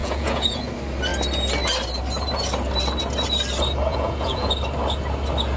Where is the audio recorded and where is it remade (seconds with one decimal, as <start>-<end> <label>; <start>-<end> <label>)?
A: 0.0-0.7 remade; 0.7-3.9 recorded; 3.9-4.5 remade; 4.5-5.6 recorded